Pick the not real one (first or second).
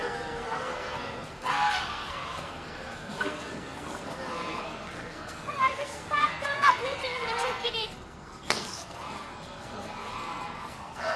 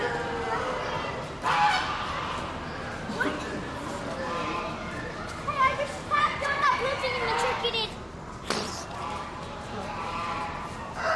first